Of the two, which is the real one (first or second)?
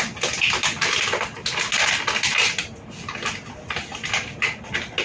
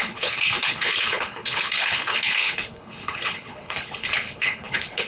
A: first